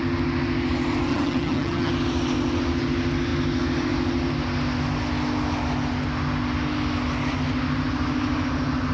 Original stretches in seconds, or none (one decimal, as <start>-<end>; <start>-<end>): 0.0-1.1; 1.9-8.9